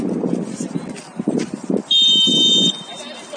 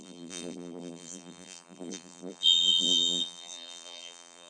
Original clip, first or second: first